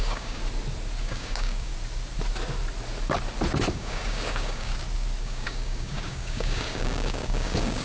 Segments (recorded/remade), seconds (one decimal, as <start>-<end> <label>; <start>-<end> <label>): 0.0-0.4 remade; 0.4-1.0 recorded; 1.0-1.7 remade; 1.7-3.7 recorded; 3.7-4.7 remade; 4.7-5.2 recorded; 5.2-7.8 remade